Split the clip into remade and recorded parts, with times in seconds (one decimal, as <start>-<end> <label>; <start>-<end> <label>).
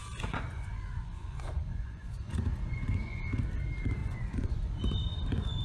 0.0-3.4 remade; 3.4-4.0 recorded; 4.0-4.8 remade; 4.8-5.6 recorded